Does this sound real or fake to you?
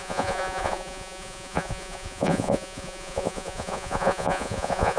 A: fake